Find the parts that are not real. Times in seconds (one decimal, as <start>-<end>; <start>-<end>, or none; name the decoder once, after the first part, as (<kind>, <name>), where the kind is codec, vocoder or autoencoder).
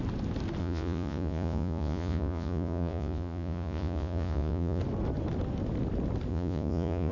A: 0.6-4.8 (vocoder, Vocos); 6.3-7.1